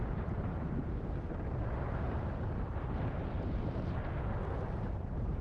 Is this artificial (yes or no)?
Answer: yes